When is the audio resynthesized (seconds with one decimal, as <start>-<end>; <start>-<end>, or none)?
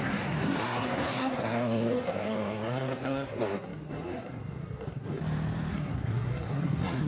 0.0-5.2; 5.7-7.1